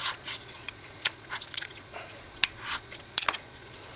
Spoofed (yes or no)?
yes